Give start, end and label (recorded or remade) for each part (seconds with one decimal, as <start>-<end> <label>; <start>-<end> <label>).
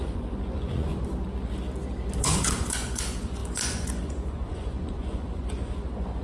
0.0-0.9 remade; 0.9-2.2 recorded; 2.2-6.2 remade